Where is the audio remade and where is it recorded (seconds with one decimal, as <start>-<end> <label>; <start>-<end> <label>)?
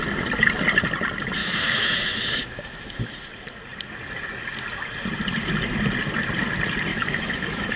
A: 0.0-1.4 recorded; 1.4-3.0 remade; 3.0-6.9 recorded; 6.9-7.8 remade